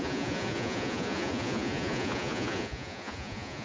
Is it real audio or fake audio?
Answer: fake